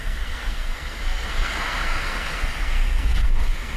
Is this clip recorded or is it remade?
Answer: remade